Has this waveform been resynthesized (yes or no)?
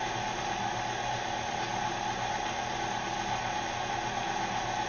no